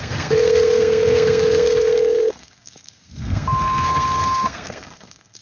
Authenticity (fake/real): fake